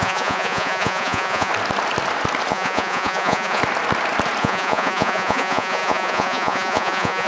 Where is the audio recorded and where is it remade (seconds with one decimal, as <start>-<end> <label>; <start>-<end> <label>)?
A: 0.0-1.5 remade; 1.5-2.5 recorded; 2.5-3.6 remade; 3.6-4.4 recorded; 4.4-7.3 remade